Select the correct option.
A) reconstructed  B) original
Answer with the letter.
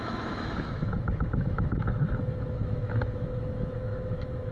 A